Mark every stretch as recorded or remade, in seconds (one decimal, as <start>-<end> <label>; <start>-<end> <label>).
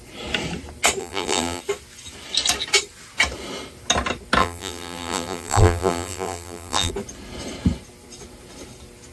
0.0-1.0 recorded; 1.0-1.6 remade; 1.6-4.4 recorded; 4.4-6.9 remade; 6.9-9.1 recorded